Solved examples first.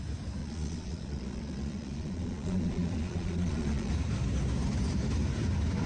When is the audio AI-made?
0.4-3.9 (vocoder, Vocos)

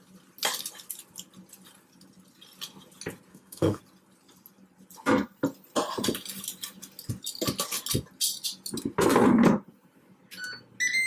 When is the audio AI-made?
3.3-3.8 (autoencoder, DAC-VAE)

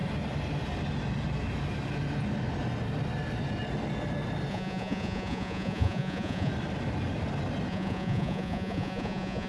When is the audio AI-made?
4.5-6.5 (vocoder, Vocos); 7.7-9.5

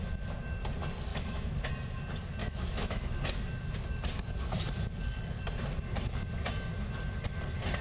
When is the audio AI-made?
1.1-1.7 (autoencoder, DAC-VAE); 2.4-3.2

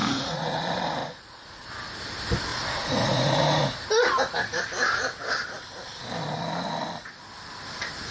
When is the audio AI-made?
0.0-0.6 (vocoder, Vocos); 1.0-1.7; 2.5-3.9

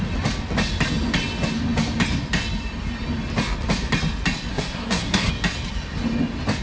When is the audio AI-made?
4.5-5.3 (codec, SNAC)